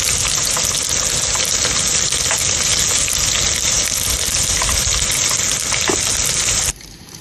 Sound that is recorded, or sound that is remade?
recorded